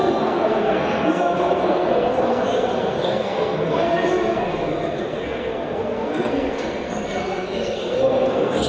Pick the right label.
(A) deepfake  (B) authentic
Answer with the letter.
A